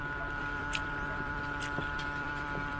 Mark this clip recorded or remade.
remade